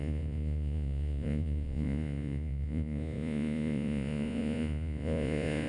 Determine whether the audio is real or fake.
fake